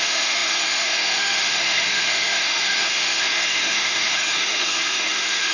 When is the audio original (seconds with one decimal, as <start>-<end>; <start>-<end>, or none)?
none